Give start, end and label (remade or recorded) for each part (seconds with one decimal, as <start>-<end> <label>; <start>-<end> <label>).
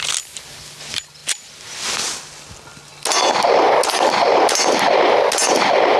0.0-6.0 recorded